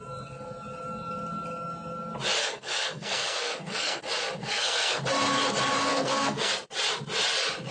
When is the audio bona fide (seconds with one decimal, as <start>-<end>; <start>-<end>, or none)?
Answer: 0.0-2.4; 4.0-4.4; 5.0-5.9; 6.5-7.7